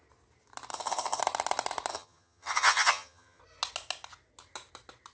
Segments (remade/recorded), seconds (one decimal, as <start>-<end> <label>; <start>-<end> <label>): 0.0-0.7 recorded; 0.7-1.2 remade; 1.2-1.9 recorded; 1.9-3.4 remade; 3.4-5.1 recorded